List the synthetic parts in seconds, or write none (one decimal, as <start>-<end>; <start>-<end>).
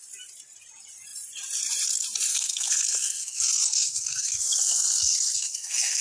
2.3-6.0